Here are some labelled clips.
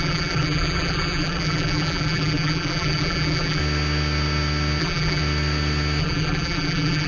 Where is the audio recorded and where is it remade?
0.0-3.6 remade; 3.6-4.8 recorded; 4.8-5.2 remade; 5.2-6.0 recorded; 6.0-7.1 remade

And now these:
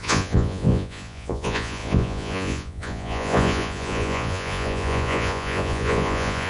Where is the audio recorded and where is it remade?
0.0-6.5 remade

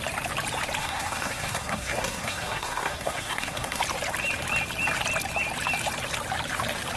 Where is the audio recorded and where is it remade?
0.0-0.8 recorded; 0.8-3.8 remade; 3.8-7.0 recorded

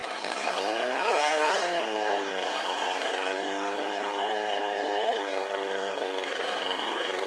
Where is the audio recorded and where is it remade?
0.0-7.3 remade

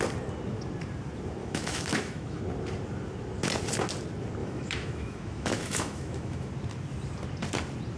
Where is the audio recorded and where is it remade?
0.0-1.4 recorded; 1.4-2.4 remade; 2.4-4.4 recorded; 4.4-6.5 remade; 6.5-8.0 recorded

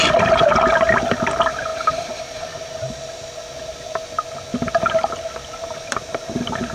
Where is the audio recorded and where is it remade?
0.0-1.7 recorded; 1.7-3.2 remade; 3.2-4.5 recorded; 4.5-6.0 remade; 6.0-6.7 recorded